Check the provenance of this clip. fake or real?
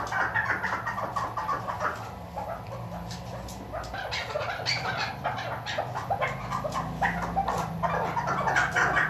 real